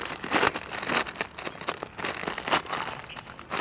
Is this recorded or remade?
recorded